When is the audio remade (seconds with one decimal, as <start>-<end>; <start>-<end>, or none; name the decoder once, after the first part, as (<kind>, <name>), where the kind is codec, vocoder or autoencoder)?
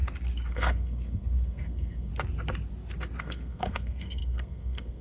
0.5-2.1 (codec, SNAC); 3.2-5.0